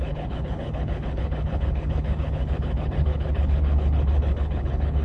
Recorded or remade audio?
remade